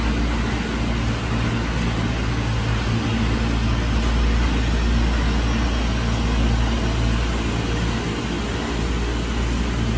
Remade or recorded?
recorded